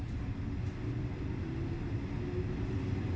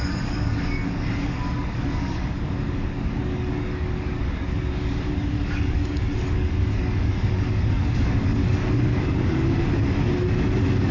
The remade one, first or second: second